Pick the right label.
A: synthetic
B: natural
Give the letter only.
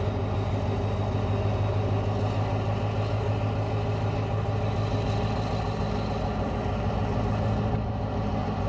B